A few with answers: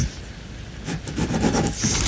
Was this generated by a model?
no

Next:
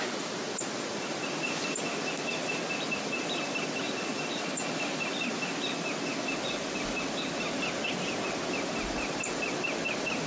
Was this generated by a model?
no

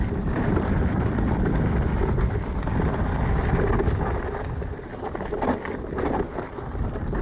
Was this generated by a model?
no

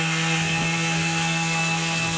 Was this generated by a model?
yes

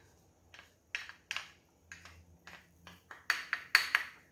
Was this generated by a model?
no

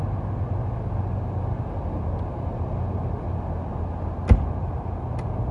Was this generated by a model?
no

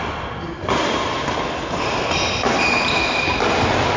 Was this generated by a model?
no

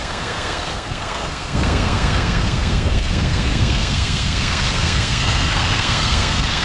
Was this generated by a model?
yes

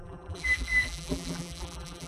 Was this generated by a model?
yes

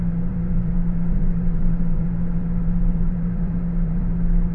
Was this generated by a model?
yes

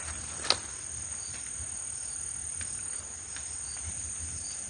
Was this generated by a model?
no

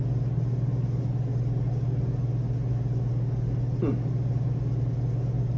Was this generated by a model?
no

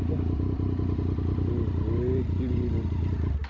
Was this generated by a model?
no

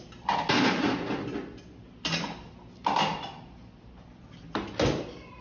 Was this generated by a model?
no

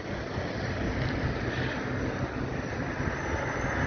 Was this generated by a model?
no